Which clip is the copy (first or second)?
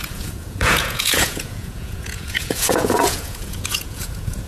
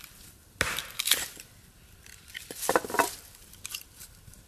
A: first